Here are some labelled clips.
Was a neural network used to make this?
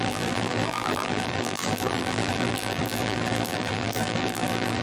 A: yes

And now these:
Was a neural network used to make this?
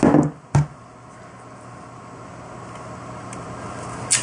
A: no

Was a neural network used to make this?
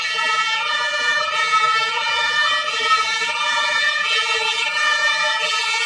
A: yes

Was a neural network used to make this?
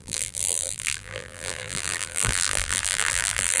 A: yes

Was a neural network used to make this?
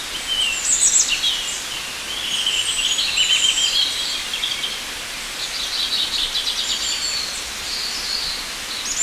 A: no